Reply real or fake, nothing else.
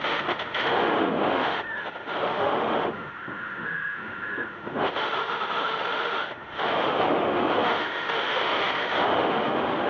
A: fake